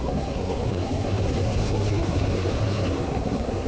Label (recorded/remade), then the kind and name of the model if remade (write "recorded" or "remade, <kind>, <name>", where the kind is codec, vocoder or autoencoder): remade, codec, SNAC